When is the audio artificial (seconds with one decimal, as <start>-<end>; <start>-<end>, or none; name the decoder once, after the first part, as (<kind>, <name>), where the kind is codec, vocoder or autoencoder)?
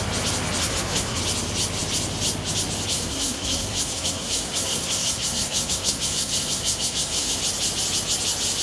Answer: 0.6-1.2 (codec, SNAC); 2.9-7.4